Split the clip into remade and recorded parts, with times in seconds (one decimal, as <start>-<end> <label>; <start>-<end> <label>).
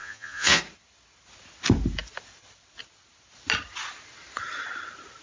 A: 0.0-0.6 remade; 0.6-5.2 recorded